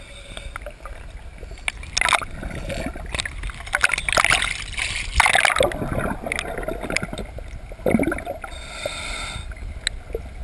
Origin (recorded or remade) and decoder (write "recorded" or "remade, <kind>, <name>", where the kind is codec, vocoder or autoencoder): recorded